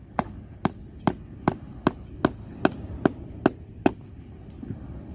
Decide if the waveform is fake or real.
fake